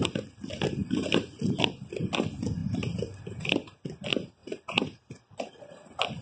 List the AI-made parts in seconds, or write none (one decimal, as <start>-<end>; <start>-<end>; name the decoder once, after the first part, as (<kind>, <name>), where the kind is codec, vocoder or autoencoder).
0.8-1.4 (vocoder, BigVGAN v2); 2.6-3.2; 4.4-5.4